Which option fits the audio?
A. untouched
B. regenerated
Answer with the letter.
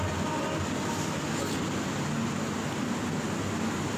A